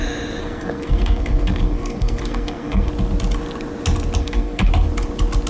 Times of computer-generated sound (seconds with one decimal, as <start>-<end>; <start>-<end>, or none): 0.4-2.9; 4.2-4.7